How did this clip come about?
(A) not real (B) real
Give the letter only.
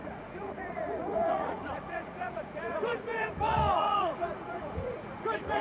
A